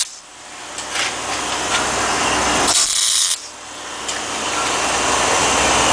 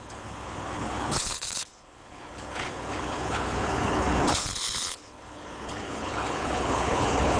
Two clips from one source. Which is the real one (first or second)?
first